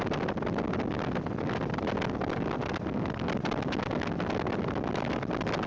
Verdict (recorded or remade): recorded